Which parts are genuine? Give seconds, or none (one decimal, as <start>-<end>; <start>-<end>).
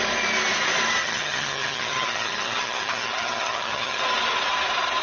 0.0-1.0; 4.0-5.0